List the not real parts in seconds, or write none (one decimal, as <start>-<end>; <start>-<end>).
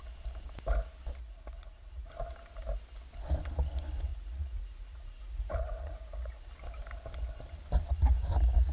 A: 1.2-2.1; 4.1-6.5